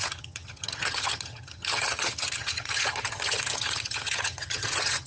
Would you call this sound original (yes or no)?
no